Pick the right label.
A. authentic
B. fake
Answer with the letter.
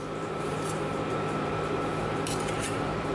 B